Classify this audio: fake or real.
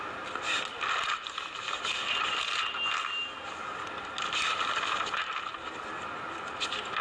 real